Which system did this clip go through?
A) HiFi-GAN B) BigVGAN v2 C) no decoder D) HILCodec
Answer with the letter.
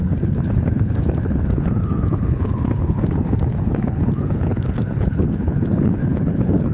D